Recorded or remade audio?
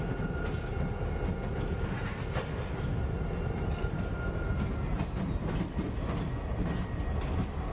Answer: recorded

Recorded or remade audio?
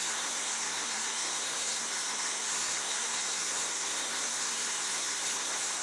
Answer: remade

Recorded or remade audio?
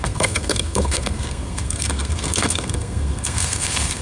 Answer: remade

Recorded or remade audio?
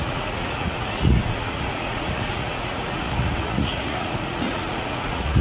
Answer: remade